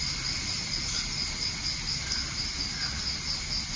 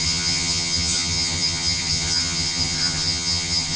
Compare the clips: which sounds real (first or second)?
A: first